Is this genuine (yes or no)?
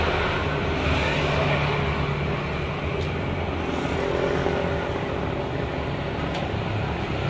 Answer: yes